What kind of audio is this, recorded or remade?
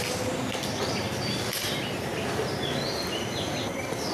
recorded